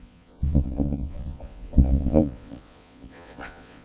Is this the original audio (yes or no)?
no